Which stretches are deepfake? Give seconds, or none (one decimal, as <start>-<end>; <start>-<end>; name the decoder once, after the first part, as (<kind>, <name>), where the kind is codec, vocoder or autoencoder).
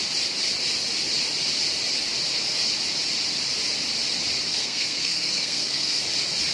4.5-6.0 (codec, SNAC)